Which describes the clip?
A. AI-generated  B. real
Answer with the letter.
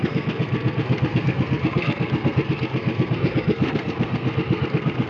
A